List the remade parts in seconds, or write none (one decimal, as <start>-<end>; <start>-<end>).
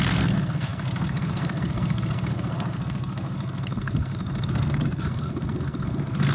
0.0-6.3